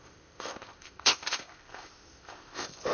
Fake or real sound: fake